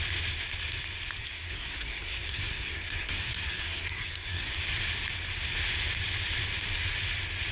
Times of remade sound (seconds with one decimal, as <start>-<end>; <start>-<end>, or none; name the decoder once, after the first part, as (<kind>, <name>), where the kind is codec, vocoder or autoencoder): 1.2-4.5 (codec, SNAC)